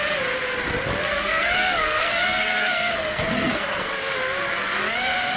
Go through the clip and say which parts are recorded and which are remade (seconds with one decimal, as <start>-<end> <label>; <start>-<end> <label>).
0.0-1.0 recorded; 1.0-3.9 remade; 3.9-5.4 recorded